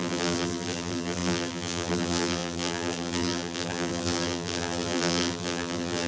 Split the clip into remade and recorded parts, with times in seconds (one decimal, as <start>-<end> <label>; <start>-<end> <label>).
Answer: 0.0-6.1 remade